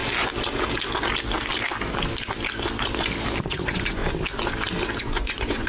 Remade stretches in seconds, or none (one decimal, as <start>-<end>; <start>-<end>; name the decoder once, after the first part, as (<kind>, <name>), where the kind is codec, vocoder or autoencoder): 3.4-4.0 (vocoder, Vocos); 5.0-5.7